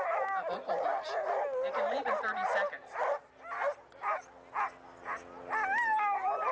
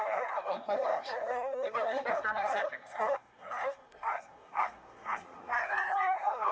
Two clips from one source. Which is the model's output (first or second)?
second